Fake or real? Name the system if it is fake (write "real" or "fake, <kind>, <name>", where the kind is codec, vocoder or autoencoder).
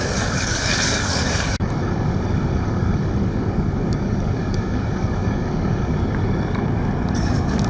fake, codec, DAC